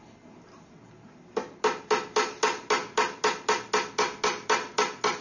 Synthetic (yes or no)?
no